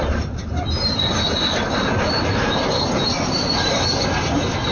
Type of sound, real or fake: real